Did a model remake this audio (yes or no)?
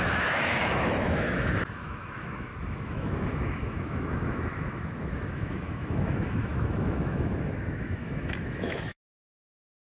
yes